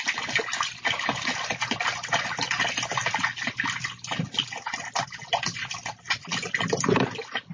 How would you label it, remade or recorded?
recorded